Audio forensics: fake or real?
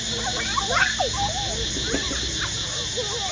real